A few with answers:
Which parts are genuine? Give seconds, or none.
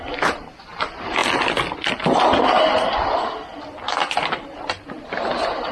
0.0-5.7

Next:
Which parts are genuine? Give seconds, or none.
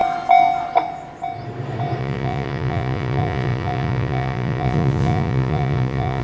0.0-2.0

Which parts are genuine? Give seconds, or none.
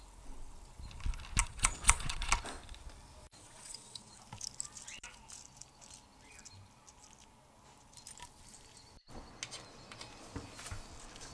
0.0-1.4; 2.3-3.2; 4.2-11.3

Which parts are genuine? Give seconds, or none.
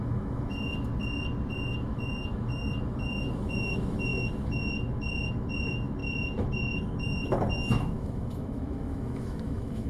0.9-1.5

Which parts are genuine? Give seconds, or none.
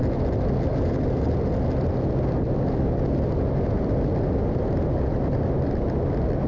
0.0-6.5